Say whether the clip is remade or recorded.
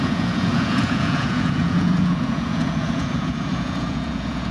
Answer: remade